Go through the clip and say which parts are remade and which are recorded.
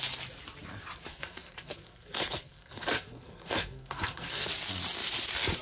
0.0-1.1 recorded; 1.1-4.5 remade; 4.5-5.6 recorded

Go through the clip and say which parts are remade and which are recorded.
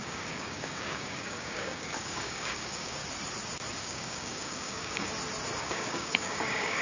0.0-3.0 remade; 3.0-3.8 recorded; 3.8-5.1 remade; 5.1-5.6 recorded; 5.6-6.8 remade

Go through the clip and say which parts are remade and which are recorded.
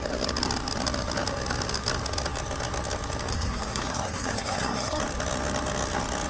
0.0-3.3 recorded; 3.3-5.0 remade; 5.0-6.3 recorded